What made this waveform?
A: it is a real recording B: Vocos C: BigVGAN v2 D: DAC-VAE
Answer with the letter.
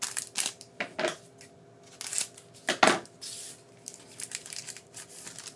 A